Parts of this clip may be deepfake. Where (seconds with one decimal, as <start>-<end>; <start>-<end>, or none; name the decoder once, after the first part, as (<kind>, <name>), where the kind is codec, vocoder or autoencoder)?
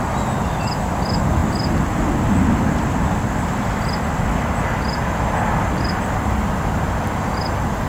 none